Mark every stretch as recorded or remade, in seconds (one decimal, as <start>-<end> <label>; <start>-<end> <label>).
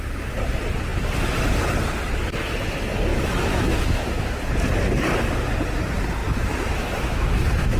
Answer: 0.0-3.1 recorded; 3.1-4.4 remade; 4.4-6.2 recorded; 6.2-7.8 remade